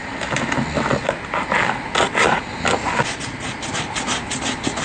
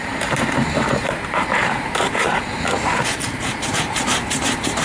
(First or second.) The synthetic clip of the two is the second